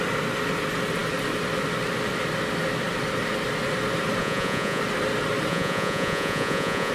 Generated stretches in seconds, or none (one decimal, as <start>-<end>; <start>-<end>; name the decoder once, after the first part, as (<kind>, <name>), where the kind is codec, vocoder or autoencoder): 4.2-4.8 (vocoder, Vocos); 5.5-6.9